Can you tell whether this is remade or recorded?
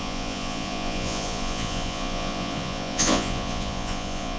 remade